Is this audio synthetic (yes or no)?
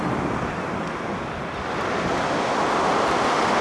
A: no